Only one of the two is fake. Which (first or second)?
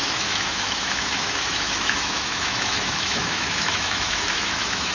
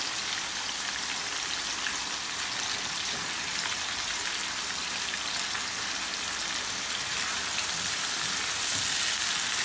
first